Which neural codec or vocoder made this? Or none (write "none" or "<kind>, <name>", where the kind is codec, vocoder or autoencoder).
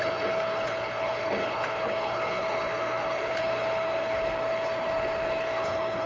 codec, HILCodec